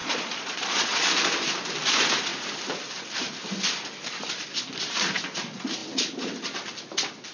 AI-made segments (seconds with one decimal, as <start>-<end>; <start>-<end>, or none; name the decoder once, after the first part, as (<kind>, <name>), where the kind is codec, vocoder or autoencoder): 0.0-1.1 (vocoder, Vocos)